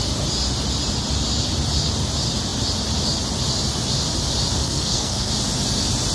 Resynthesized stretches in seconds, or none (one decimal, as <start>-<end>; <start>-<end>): 4.6-5.3